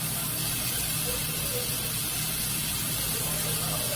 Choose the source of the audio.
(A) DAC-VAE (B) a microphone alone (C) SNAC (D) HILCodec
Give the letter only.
B